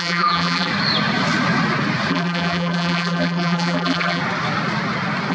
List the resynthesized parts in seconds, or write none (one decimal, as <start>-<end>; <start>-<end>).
0.0-0.7; 2.1-4.2